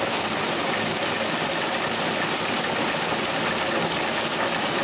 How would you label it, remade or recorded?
recorded